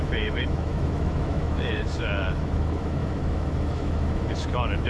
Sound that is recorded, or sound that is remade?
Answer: remade